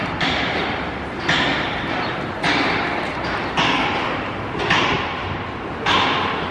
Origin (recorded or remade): remade